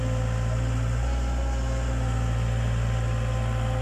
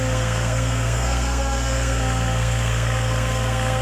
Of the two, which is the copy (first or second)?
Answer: second